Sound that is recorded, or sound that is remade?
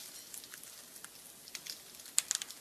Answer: recorded